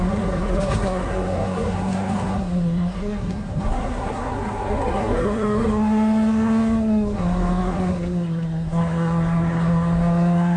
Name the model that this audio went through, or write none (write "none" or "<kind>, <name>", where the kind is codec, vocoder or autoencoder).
codec, SNAC